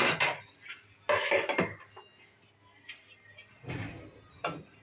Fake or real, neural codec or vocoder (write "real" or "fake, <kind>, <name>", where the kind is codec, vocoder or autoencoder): real